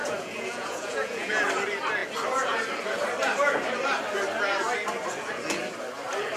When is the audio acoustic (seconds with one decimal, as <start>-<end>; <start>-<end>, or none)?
1.4-6.4